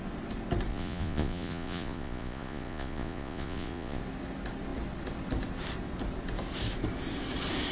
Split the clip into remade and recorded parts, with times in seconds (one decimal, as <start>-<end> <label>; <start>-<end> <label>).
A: 0.0-0.7 recorded; 0.7-4.0 remade; 4.0-7.7 recorded